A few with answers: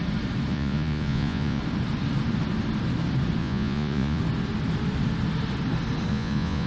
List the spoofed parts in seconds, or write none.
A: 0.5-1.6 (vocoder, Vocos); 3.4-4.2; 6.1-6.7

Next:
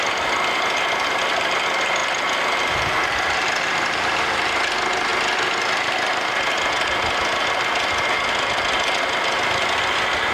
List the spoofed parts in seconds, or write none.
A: none